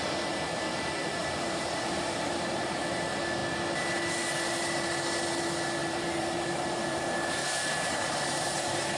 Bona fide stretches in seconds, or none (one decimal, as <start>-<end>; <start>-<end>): 0.0-1.2; 2.8-5.8; 7.0-7.4